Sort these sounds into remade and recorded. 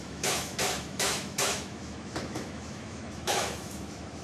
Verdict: remade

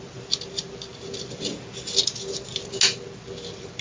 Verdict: recorded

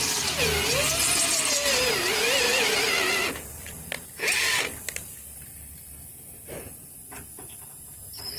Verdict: recorded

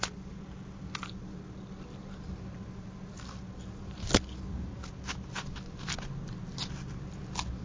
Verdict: recorded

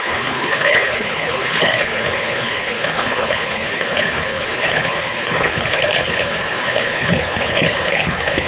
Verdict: remade